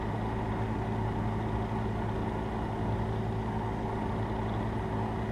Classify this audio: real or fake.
real